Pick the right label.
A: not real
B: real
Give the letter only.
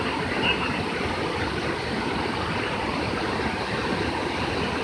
B